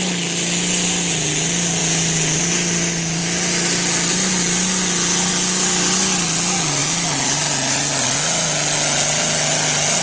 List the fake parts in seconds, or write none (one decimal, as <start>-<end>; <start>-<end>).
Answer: none